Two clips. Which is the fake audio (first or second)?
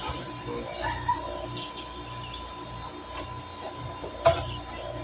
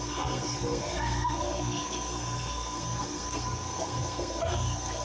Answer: second